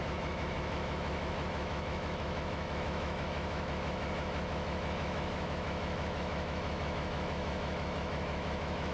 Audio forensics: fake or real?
fake